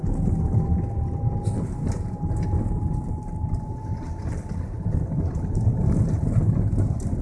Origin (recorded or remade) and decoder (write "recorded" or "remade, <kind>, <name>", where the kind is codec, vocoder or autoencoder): recorded